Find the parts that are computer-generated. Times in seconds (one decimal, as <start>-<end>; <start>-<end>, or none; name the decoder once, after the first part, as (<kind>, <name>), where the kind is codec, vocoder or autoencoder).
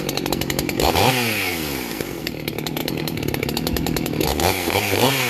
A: 0.0-5.3 (codec, SNAC)